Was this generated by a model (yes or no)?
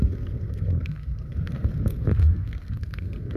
yes